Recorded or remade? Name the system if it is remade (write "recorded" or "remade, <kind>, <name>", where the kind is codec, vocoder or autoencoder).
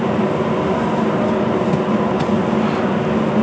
recorded